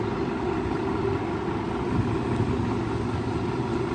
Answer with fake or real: real